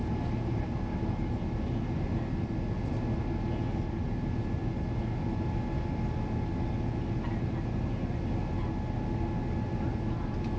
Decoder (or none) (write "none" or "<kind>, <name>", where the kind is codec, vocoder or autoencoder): none